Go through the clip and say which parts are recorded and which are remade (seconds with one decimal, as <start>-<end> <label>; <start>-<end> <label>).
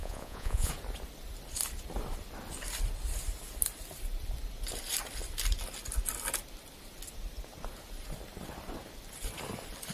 0.0-0.7 remade; 0.7-9.9 recorded